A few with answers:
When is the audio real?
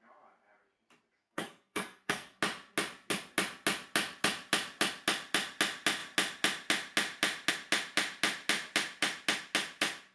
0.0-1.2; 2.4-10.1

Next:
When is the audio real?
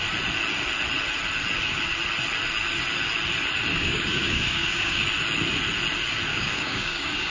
0.0-3.7; 5.0-6.3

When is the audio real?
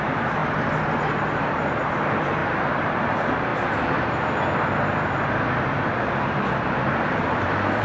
0.4-1.0; 3.5-5.8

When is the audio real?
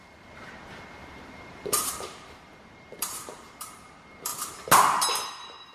4.3-5.3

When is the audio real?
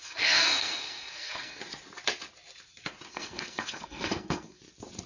1.6-3.1; 4.6-5.1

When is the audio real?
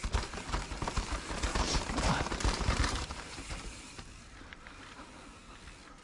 0.0-1.5; 5.1-6.0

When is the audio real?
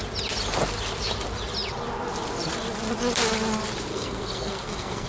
0.0-3.9